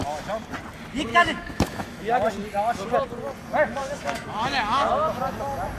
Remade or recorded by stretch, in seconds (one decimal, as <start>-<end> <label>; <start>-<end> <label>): 0.0-1.1 recorded; 1.1-2.3 remade; 2.3-3.8 recorded; 3.8-4.9 remade; 4.9-5.8 recorded